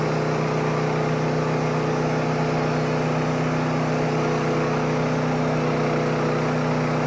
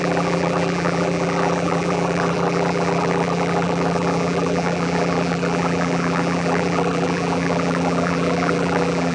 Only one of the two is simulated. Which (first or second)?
second